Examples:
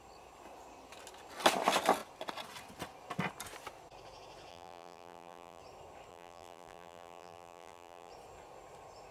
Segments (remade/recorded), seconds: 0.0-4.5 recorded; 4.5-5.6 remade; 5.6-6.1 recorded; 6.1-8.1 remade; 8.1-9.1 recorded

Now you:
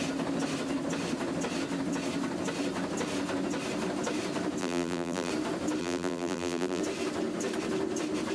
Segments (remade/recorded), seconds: 0.0-4.6 recorded; 4.6-5.3 remade; 5.3-5.8 recorded; 5.8-6.8 remade; 6.8-8.3 recorded

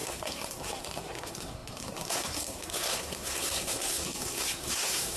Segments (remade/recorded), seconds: 0.0-5.2 remade